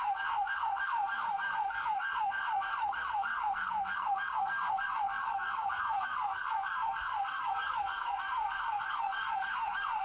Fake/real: fake